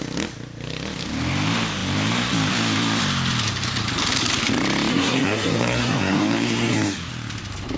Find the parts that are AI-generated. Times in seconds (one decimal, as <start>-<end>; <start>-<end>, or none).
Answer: 4.9-7.1